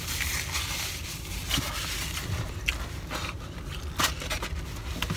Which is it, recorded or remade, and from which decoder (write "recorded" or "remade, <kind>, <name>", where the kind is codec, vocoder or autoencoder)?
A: recorded